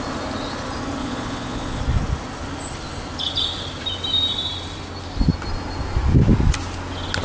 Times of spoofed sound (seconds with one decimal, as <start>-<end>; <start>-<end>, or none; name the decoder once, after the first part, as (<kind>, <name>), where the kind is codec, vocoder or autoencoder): 1.0-1.8 (vocoder, Vocos)